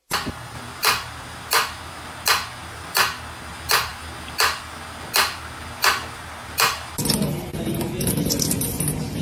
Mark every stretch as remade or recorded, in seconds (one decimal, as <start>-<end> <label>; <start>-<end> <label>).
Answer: 0.0-9.2 recorded